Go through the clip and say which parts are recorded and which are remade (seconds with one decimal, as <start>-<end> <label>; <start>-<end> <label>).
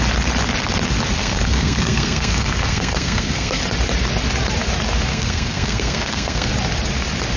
0.0-1.2 recorded; 1.2-3.6 remade; 3.6-5.1 recorded; 5.1-6.5 remade; 6.5-7.4 recorded